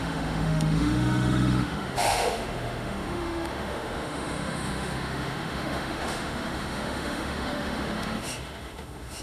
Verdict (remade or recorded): remade